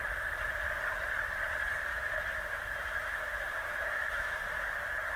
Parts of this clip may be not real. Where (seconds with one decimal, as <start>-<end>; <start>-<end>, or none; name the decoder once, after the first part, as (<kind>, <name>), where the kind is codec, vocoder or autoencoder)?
1.9-4.7 (autoencoder, DAC-VAE)